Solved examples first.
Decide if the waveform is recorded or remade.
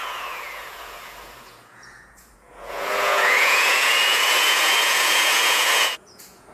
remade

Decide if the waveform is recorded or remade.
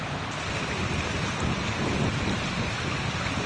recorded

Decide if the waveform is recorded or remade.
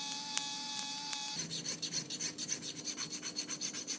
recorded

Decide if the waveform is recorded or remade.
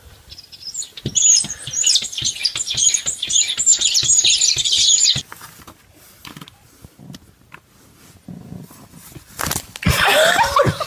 recorded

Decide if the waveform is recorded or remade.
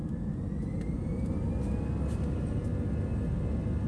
recorded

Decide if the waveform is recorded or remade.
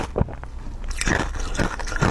recorded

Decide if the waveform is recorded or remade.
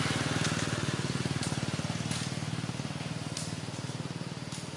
recorded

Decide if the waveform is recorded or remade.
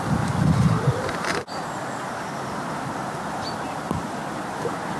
recorded